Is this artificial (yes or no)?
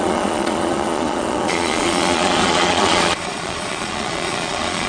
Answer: yes